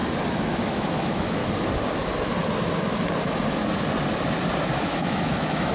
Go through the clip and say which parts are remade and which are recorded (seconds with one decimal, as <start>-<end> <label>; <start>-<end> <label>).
0.0-0.7 recorded; 0.7-1.4 remade; 1.4-4.8 recorded; 4.8-5.7 remade